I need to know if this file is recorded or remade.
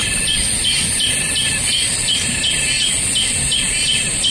recorded